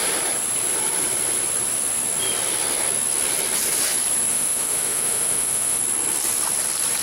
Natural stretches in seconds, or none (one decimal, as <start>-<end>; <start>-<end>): 0.0-4.3; 5.8-7.0